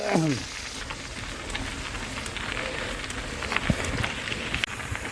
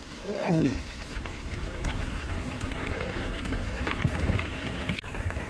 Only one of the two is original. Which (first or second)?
first